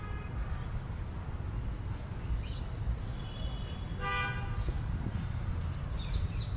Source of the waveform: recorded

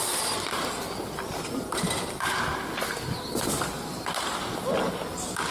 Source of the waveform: recorded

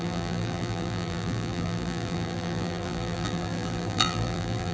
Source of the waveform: remade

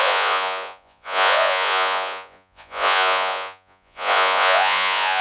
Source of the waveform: remade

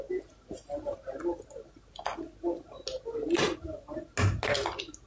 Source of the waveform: recorded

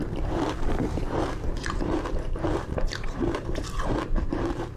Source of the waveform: remade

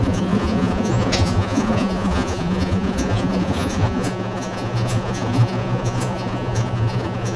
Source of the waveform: remade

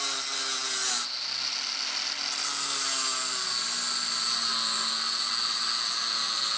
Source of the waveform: recorded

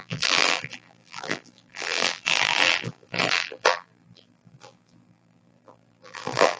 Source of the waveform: remade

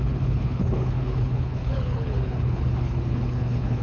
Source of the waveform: remade